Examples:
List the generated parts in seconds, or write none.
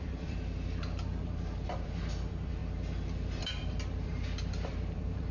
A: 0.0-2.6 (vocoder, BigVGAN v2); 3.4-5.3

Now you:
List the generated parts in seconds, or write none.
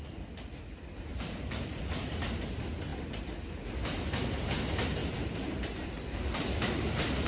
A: 1.1-1.6 (vocoder, BigVGAN v2); 5.0-7.3